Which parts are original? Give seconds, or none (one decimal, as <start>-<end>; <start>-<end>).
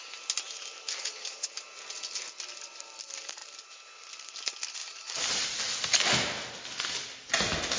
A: 0.0-3.4; 4.3-4.8; 5.6-7.8